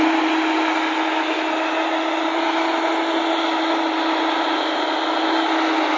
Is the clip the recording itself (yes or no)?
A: yes